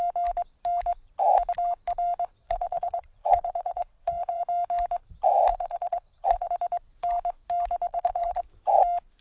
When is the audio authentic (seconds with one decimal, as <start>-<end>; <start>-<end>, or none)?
0.0-2.4; 4.4-5.5; 6.5-7.9; 8.4-9.2